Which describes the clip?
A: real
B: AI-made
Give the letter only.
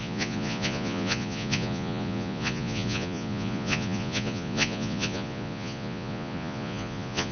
B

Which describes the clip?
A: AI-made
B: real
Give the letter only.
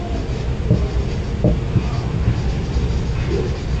B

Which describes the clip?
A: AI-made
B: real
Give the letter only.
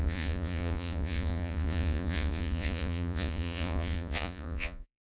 A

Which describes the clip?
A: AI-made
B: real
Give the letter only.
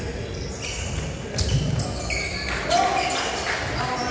B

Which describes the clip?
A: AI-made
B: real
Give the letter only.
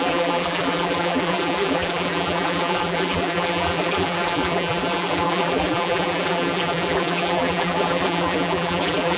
A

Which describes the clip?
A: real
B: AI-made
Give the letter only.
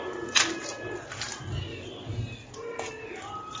A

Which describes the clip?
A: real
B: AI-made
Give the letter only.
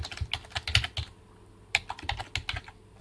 A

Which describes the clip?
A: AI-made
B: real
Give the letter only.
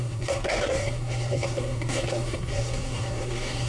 A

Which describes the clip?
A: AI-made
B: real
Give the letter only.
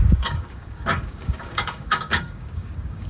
A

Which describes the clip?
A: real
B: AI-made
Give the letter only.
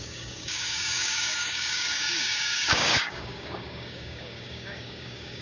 B